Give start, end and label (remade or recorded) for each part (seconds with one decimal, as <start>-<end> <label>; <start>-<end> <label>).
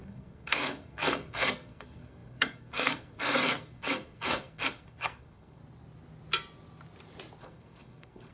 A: 0.0-5.6 remade; 5.6-7.4 recorded; 7.4-8.3 remade